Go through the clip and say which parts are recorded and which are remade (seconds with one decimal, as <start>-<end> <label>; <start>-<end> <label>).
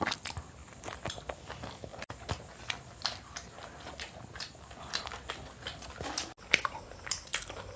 0.0-7.8 recorded